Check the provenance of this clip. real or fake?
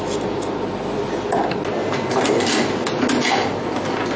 real